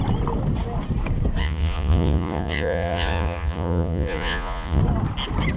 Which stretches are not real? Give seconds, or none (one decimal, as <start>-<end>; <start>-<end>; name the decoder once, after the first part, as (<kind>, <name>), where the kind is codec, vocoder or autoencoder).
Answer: 1.4-4.8 (vocoder, Vocos)